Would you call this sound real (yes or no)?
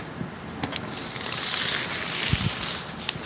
yes